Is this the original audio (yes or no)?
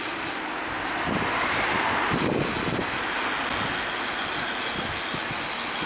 yes